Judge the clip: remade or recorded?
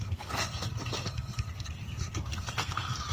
remade